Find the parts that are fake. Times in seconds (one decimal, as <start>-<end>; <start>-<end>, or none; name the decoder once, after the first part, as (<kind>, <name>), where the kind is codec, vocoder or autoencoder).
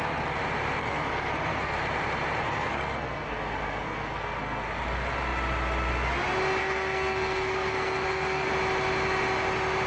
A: 0.8-1.8 (codec, SNAC); 2.4-4.6; 6.6-8.5